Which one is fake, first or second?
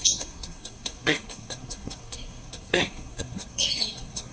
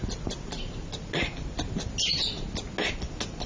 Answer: first